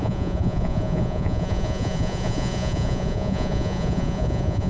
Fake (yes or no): yes